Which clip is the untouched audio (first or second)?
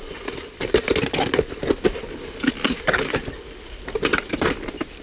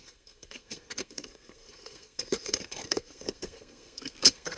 first